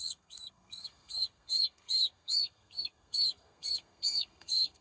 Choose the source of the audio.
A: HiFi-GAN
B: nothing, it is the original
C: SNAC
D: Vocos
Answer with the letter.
C